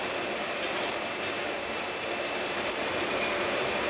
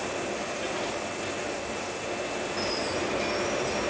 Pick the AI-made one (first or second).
first